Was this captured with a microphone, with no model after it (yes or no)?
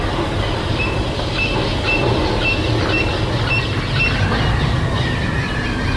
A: yes